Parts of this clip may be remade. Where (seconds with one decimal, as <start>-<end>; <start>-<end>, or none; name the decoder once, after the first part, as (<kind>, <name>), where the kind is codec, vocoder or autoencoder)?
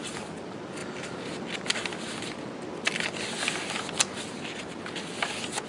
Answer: none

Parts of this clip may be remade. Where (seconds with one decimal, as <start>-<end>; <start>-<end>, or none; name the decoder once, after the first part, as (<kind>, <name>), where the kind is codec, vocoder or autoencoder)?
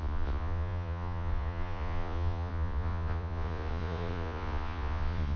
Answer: 0.0-5.4 (vocoder, Vocos)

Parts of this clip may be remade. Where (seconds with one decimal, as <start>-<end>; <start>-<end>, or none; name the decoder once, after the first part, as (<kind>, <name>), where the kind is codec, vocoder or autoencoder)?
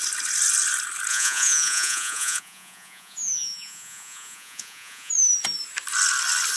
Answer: 1.1-5.1 (vocoder, Vocos)